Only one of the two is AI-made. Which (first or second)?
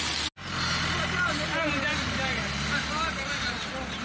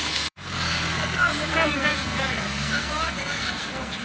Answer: second